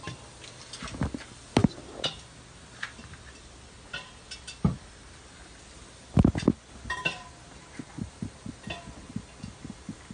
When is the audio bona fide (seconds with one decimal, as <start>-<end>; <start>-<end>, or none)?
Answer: 0.0-10.1